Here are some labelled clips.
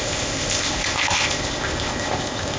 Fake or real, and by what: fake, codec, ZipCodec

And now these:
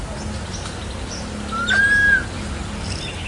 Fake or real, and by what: real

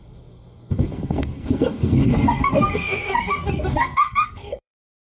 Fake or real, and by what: fake, codec, SNAC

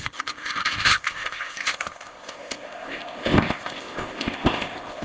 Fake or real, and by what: fake, codec, ZipCodec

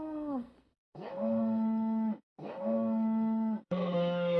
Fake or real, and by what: fake, codec, SNAC